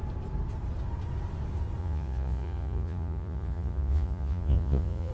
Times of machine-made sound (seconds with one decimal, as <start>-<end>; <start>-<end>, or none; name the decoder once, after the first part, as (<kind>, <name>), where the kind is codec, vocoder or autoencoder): 1.8-5.1 (vocoder, Vocos)